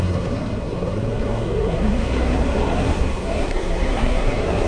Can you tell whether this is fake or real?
fake